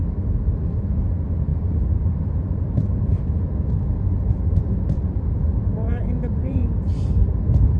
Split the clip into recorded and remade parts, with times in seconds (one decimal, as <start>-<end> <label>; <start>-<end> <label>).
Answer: 0.0-1.5 recorded; 1.5-3.0 remade; 3.0-4.1 recorded; 4.1-5.0 remade; 5.0-5.5 recorded; 5.5-6.6 remade; 6.6-7.8 recorded